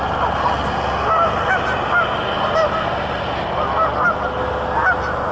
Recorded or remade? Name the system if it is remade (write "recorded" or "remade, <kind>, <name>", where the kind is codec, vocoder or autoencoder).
recorded